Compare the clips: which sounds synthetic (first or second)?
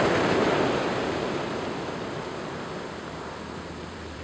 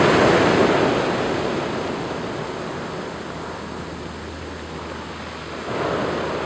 first